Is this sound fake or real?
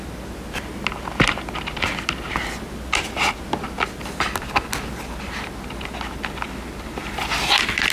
real